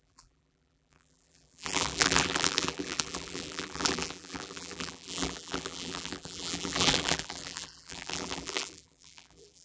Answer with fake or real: fake